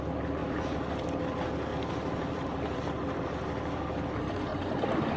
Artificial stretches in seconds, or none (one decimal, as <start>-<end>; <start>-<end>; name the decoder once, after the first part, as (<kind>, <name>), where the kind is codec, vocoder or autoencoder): 0.4-1.2 (vocoder, BigVGAN v2); 1.7-3.2; 4.5-5.2